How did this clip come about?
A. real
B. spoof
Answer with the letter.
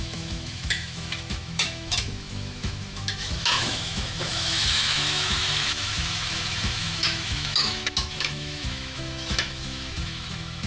B